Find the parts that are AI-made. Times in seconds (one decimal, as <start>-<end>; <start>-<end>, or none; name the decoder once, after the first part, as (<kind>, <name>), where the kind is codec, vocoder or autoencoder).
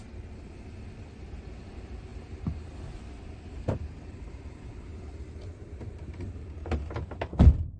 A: none